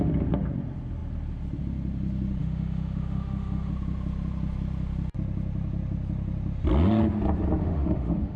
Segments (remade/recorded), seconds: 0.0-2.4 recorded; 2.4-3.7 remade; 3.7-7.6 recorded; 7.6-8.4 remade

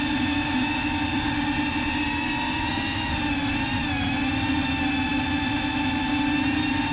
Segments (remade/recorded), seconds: 0.0-6.9 recorded

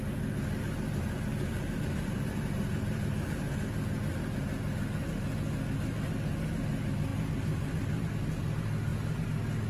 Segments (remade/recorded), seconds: 0.0-1.3 recorded; 1.3-3.5 remade; 3.5-7.1 recorded; 7.1-8.1 remade; 8.1-9.7 recorded

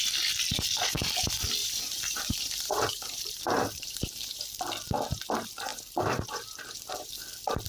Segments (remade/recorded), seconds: 0.0-1.6 recorded; 1.6-4.4 remade; 4.4-5.7 recorded; 5.7-7.2 remade; 7.2-7.7 recorded

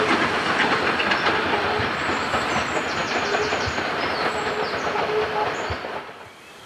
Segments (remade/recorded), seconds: 0.0-6.7 recorded

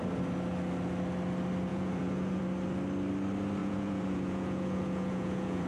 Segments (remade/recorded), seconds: 0.0-1.7 recorded; 1.7-2.4 remade; 2.4-3.6 recorded; 3.6-5.7 remade